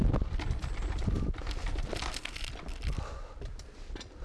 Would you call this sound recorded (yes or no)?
yes